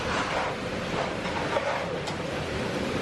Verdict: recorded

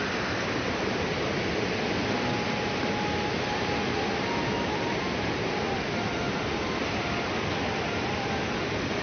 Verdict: recorded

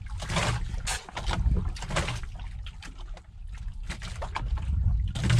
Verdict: recorded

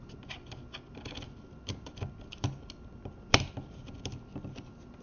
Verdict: recorded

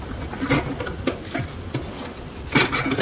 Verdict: recorded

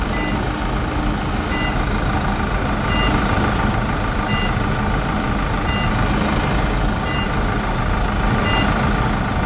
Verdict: recorded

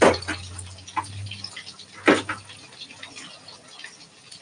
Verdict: recorded